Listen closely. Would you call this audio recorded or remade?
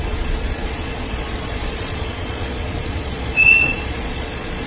remade